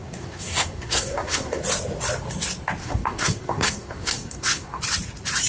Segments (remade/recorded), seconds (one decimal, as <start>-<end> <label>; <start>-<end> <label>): 0.0-1.6 remade; 1.6-2.8 recorded; 2.8-4.8 remade; 4.8-5.5 recorded